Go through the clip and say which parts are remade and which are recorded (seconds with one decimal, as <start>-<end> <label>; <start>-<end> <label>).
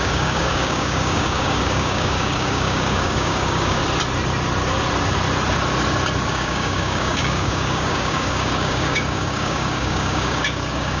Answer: 0.0-3.8 remade; 3.8-6.3 recorded; 6.3-11.0 remade